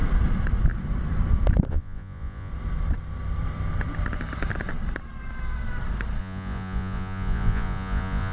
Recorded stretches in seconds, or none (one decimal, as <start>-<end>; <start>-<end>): 0.0-1.7; 2.5-6.2

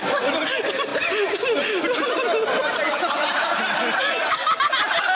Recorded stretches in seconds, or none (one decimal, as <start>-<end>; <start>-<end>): 0.0-5.1

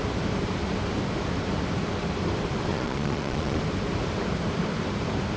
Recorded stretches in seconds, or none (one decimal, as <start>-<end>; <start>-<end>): 0.0-2.7; 3.6-5.4